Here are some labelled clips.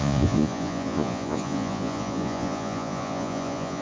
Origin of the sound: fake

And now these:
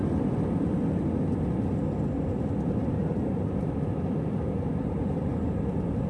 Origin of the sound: real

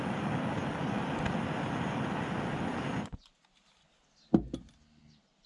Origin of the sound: real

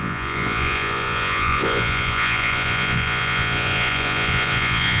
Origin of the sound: fake